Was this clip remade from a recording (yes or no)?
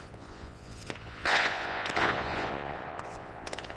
yes